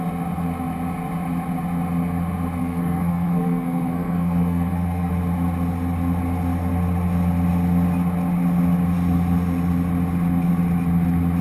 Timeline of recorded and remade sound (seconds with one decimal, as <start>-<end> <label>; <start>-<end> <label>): 0.0-2.6 recorded; 2.6-5.1 remade; 5.1-11.4 recorded